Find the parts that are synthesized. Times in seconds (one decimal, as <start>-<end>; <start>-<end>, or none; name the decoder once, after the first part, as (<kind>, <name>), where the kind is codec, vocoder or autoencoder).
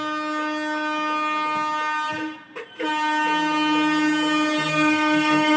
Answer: 4.7-5.6 (codec, SNAC)